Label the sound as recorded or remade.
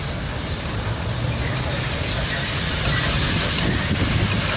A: recorded